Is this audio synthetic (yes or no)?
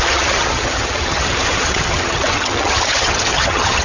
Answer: yes